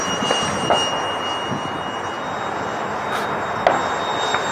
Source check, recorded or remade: recorded